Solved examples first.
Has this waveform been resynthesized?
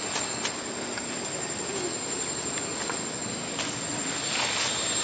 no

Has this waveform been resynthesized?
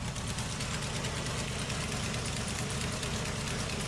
no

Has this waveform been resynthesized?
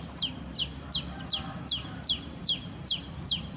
no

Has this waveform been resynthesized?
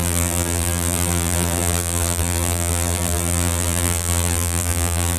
yes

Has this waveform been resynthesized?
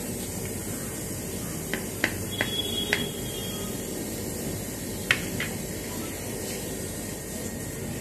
yes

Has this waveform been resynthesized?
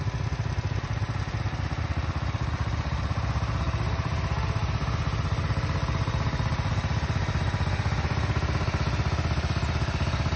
no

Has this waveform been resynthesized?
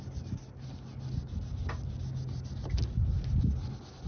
no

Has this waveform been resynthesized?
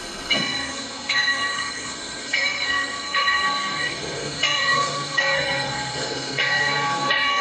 yes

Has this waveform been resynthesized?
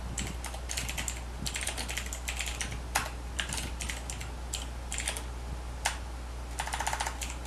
no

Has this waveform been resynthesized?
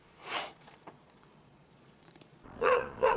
yes